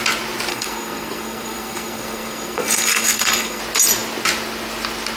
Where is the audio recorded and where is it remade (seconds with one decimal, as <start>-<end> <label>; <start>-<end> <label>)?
0.0-0.5 recorded; 0.5-3.6 remade; 3.6-5.2 recorded